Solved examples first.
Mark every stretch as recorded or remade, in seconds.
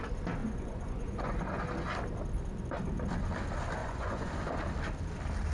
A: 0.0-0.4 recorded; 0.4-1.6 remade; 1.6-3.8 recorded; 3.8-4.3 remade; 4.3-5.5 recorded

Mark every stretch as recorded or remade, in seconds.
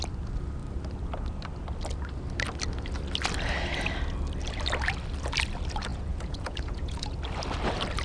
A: 0.0-5.9 recorded; 5.9-7.2 remade; 7.2-8.0 recorded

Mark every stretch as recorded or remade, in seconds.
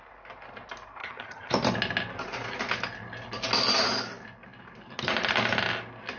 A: 0.0-1.0 recorded; 1.0-1.5 remade; 1.5-6.2 recorded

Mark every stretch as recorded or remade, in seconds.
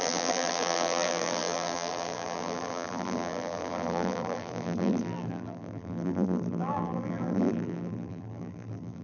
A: 0.0-9.0 remade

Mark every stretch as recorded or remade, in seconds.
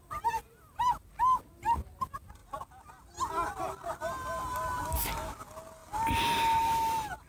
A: 0.0-7.3 recorded